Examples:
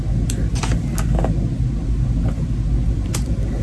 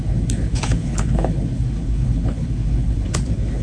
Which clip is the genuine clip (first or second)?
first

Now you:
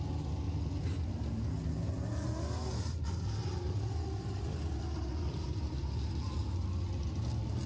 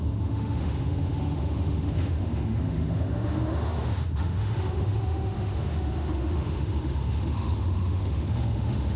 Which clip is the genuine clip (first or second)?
first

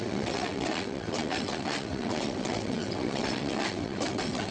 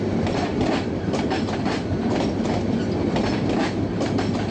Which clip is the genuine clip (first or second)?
second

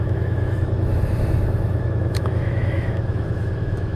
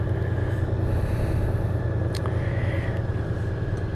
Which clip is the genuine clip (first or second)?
second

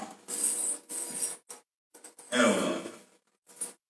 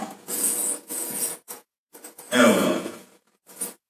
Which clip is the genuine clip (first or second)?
first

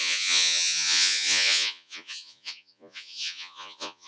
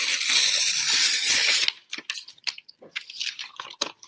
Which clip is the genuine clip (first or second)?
second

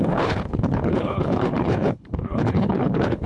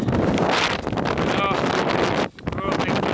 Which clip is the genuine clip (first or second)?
second